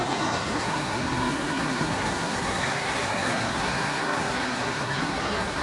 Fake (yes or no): yes